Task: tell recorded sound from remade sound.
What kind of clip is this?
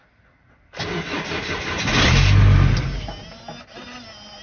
recorded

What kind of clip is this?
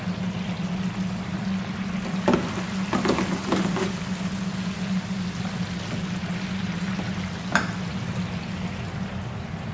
recorded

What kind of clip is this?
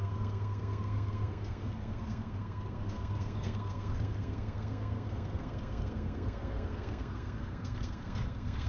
remade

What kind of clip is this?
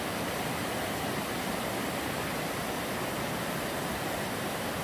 recorded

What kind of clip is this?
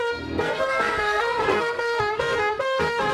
remade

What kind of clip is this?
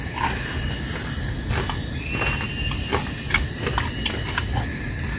recorded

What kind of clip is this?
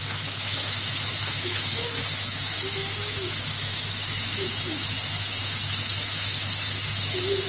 remade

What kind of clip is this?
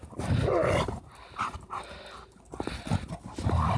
recorded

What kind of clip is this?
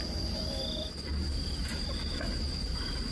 recorded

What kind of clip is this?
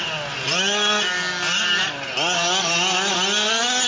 recorded